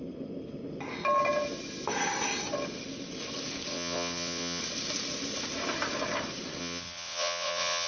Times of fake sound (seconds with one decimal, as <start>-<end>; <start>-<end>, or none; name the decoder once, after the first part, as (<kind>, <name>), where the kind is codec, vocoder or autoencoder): 3.7-4.6 (vocoder, WaveNeXt); 6.6-7.9